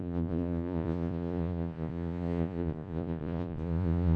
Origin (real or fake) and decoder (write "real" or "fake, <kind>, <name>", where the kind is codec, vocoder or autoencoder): fake, vocoder, Vocos